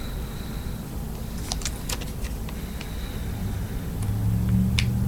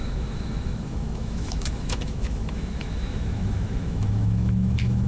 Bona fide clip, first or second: first